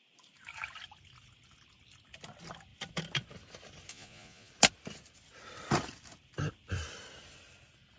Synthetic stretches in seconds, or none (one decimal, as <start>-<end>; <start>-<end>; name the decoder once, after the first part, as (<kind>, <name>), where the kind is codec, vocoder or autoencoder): 3.9-4.5 (vocoder, Vocos)